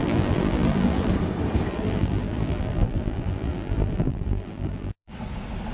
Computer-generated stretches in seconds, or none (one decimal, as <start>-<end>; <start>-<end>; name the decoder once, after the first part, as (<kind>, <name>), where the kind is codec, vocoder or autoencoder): 0.0-1.1 (vocoder, BigVGAN v2); 1.7-5.1